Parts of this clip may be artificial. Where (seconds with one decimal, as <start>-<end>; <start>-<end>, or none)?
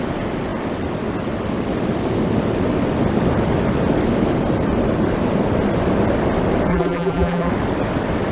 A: 6.7-7.5